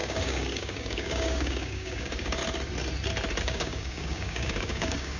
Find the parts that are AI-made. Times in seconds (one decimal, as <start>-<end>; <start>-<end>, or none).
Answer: 0.0-2.4; 3.4-5.2